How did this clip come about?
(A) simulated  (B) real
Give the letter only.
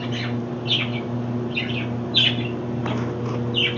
B